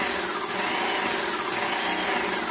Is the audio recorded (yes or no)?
yes